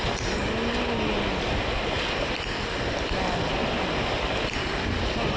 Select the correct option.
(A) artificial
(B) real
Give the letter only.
B